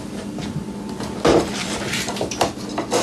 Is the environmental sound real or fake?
real